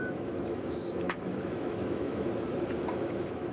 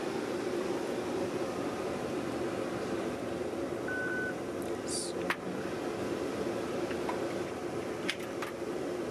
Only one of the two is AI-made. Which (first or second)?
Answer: first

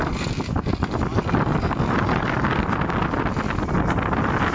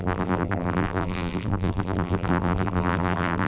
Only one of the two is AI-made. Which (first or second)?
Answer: second